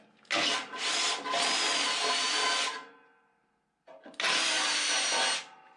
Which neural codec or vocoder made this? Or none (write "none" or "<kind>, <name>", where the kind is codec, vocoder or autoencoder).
none